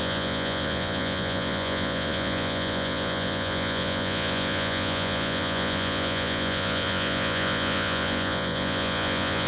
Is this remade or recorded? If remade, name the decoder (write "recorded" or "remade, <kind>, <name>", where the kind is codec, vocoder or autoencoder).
remade, vocoder, Vocos